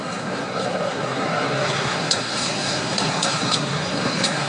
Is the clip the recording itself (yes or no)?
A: no